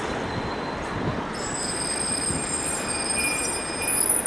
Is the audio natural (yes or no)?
yes